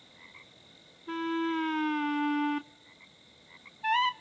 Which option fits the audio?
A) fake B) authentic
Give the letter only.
B